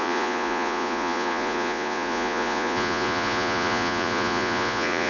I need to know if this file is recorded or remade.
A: remade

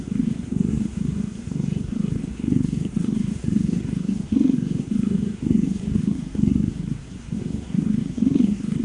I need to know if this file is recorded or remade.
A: remade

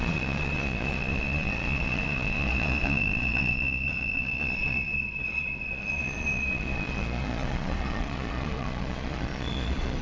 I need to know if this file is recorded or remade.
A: remade